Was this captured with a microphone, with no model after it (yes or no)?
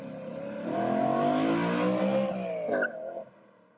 yes